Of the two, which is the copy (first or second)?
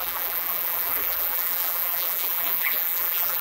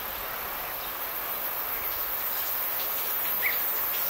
first